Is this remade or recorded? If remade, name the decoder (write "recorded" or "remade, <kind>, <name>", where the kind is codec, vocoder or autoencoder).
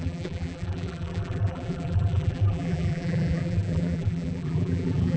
remade, vocoder, BigVGAN v2